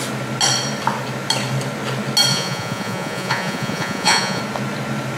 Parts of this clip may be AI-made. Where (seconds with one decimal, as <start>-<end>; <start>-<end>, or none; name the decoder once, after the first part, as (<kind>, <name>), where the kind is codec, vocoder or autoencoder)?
2.3-4.4 (vocoder, Vocos)